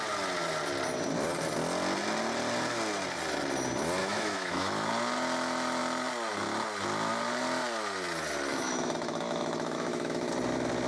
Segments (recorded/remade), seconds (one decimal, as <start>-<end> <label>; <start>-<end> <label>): 0.0-4.0 recorded; 4.0-4.9 remade; 4.9-8.5 recorded; 8.5-10.3 remade; 10.3-10.9 recorded